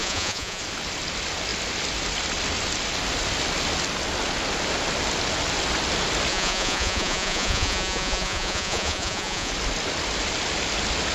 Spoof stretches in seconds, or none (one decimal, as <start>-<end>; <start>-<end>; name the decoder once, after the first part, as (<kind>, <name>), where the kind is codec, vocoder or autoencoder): 0.0-0.6 (vocoder, Vocos); 6.3-9.5